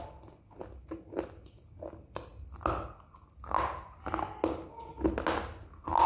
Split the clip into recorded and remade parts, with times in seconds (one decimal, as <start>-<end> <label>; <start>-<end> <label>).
0.0-6.1 recorded